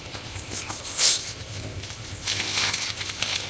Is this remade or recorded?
remade